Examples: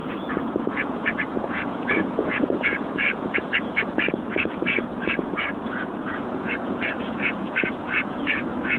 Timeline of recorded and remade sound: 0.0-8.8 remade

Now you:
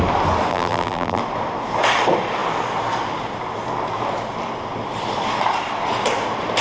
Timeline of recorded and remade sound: 0.0-0.5 recorded; 0.5-1.2 remade; 1.2-6.6 recorded

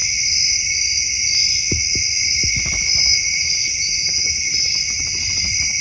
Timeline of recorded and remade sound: 0.0-3.1 recorded; 3.1-4.5 remade; 4.5-5.8 recorded